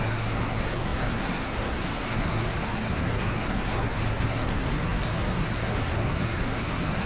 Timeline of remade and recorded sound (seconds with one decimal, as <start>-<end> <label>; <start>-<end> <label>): 0.0-7.1 remade